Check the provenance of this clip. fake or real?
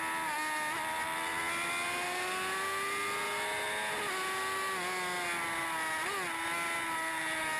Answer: real